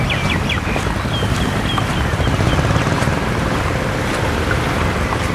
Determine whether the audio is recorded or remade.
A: recorded